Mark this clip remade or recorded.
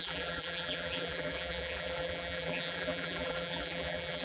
remade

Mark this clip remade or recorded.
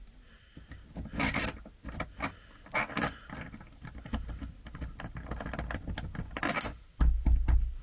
recorded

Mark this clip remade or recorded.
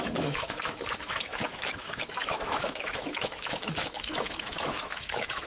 remade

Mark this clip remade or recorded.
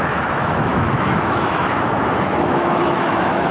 remade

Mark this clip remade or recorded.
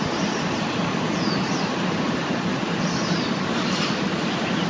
recorded